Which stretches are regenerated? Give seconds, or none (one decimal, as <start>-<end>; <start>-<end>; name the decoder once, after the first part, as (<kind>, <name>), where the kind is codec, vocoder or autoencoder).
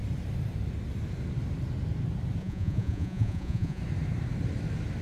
2.4-3.8 (vocoder, Vocos)